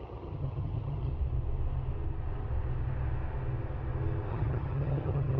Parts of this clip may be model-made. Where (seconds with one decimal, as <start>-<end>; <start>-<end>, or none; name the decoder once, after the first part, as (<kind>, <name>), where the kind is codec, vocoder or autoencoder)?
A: 0.0-1.1 (vocoder, HiFi-GAN); 4.3-5.4

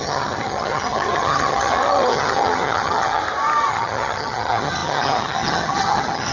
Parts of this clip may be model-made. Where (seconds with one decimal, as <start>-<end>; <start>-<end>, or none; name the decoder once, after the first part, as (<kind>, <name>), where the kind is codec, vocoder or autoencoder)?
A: 0.0-3.2 (vocoder, HiFi-GAN); 3.7-6.3